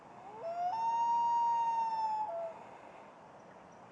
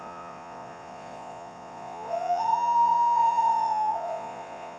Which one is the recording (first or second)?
first